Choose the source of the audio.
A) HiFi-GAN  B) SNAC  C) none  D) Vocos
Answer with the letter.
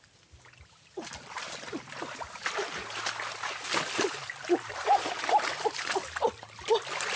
C